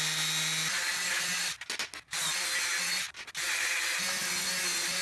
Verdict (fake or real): real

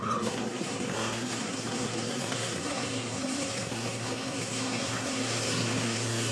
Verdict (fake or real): fake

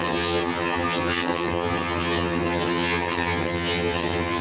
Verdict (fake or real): fake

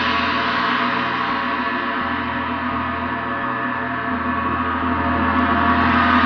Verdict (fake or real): real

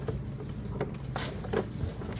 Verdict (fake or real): real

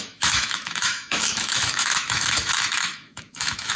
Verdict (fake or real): fake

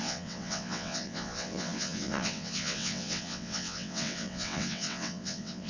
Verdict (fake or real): fake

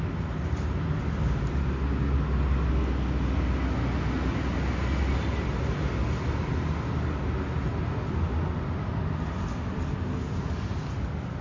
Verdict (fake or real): real